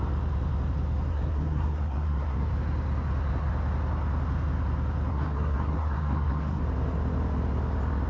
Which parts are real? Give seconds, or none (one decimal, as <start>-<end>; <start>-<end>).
0.0-1.1; 2.5-5.1; 6.6-8.1